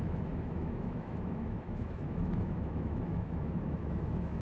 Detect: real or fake fake